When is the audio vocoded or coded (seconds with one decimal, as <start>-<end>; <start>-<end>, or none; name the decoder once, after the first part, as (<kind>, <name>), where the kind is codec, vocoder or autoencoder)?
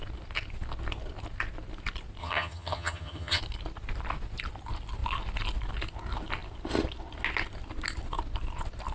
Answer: 2.2-3.4 (vocoder, HiFi-GAN)